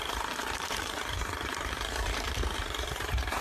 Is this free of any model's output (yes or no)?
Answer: no